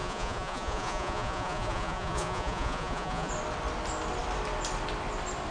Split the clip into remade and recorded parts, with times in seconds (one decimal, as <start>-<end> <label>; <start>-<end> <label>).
0.0-3.3 remade; 3.3-5.5 recorded